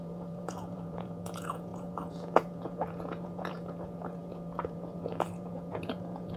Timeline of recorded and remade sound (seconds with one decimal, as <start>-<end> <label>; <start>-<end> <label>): 0.0-6.4 remade